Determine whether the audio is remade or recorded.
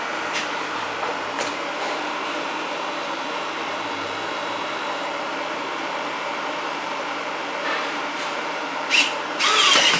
remade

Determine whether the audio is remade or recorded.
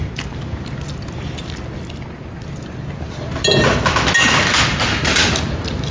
recorded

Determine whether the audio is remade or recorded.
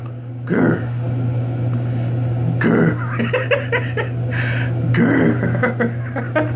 recorded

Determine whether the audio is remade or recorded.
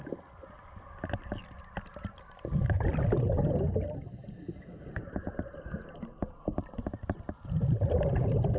recorded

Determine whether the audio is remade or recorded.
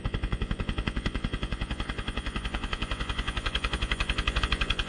remade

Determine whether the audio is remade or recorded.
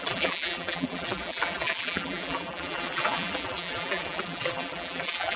remade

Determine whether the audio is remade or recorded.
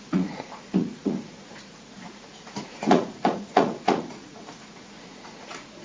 remade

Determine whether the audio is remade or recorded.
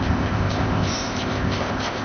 remade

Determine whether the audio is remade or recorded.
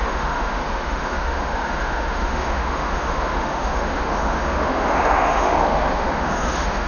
remade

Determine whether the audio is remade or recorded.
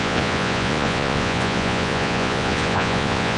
remade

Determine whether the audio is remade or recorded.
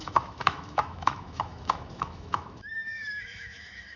remade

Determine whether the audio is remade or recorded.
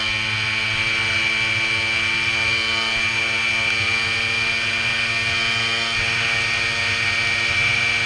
recorded